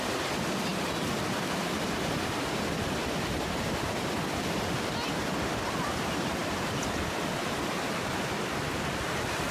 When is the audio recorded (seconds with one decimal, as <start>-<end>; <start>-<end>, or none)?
none